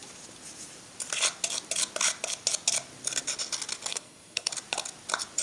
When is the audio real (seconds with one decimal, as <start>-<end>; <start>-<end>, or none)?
0.0-3.9; 4.5-5.4